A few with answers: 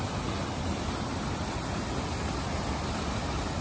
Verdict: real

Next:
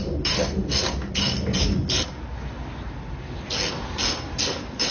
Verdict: real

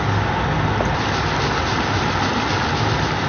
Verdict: real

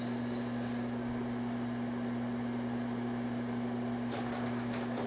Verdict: real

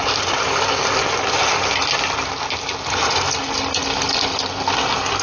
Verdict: real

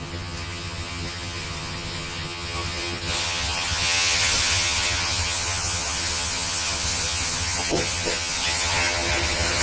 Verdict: fake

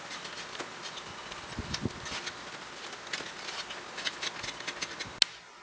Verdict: real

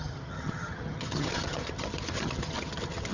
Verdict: fake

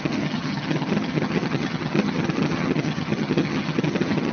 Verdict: fake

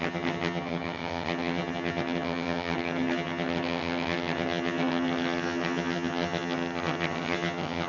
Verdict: fake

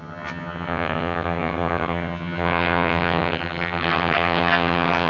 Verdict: fake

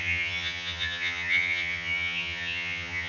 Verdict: fake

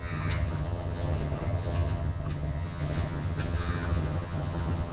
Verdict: fake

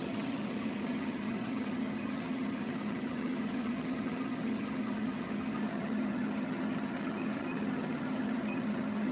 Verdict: fake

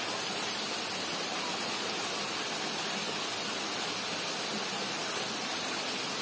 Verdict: real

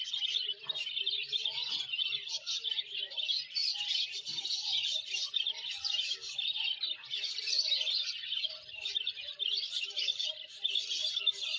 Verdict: real